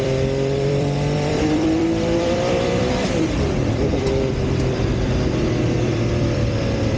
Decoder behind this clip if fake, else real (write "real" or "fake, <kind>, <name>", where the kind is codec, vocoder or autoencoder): fake, vocoder, BigVGAN v2